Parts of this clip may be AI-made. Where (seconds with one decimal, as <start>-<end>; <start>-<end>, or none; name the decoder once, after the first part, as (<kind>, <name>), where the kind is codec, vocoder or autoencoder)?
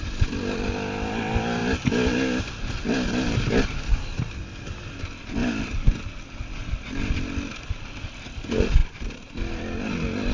none